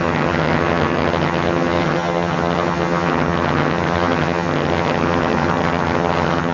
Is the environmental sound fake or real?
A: fake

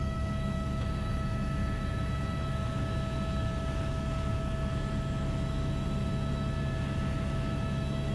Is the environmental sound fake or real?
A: fake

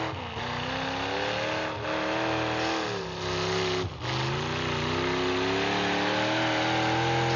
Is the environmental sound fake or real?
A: real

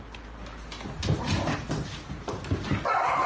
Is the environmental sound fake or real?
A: real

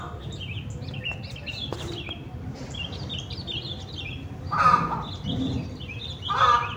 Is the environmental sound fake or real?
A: real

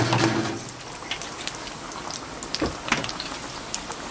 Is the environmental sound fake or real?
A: real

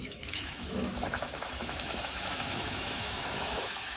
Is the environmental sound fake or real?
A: fake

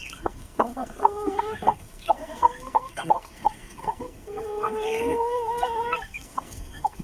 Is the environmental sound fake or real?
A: fake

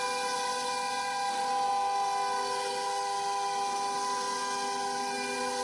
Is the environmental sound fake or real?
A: real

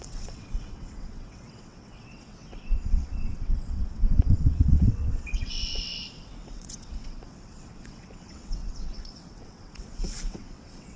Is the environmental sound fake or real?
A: fake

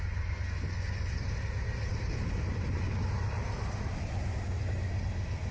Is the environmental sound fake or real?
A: real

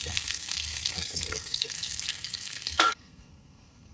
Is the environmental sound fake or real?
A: fake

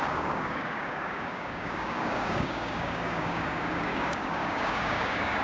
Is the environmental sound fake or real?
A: fake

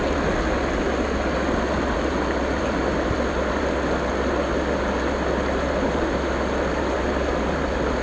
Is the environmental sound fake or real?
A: real